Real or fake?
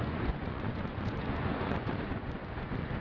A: fake